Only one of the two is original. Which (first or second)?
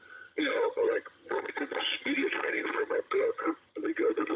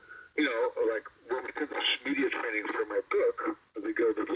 second